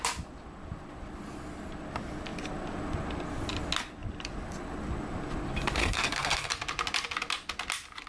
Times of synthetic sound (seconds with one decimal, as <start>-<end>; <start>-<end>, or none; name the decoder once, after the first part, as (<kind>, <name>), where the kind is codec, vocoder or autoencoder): 5.8-6.5 (codec, SNAC)